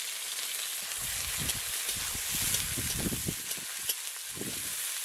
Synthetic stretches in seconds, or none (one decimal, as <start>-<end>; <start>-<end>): none